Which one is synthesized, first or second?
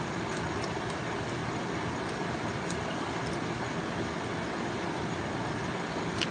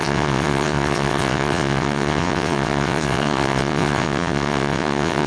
second